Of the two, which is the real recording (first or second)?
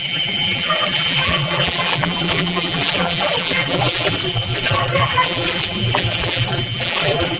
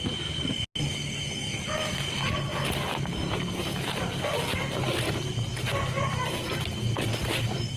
second